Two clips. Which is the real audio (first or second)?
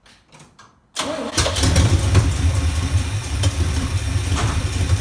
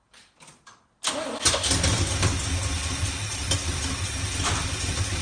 second